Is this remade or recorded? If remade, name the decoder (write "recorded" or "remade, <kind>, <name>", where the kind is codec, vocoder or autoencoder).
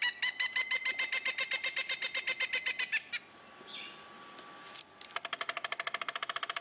recorded